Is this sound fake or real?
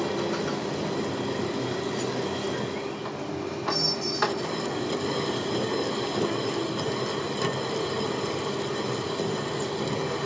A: real